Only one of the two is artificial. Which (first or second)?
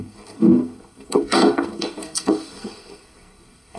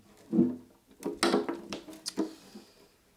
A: first